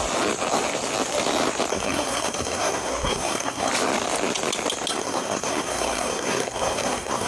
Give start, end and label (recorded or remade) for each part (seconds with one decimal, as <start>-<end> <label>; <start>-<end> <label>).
0.0-1.7 recorded; 1.7-3.7 remade; 3.7-4.9 recorded; 4.9-7.3 remade